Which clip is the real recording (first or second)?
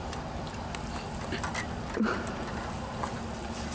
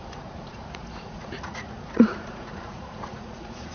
first